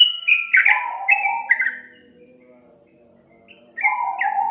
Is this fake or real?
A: real